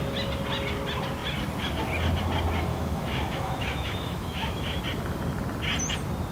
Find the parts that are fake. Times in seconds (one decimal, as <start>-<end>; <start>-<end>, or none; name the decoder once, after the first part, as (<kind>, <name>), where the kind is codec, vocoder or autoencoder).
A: 2.7-4.8 (autoencoder, DAC-VAE)